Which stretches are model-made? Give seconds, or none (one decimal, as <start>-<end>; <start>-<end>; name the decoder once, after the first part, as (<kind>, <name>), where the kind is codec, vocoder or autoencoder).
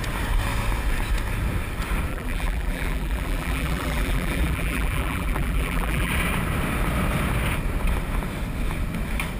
2.1-6.1 (vocoder, BigVGAN v2)